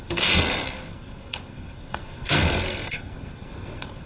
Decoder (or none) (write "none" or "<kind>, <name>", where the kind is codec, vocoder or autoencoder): codec, SNAC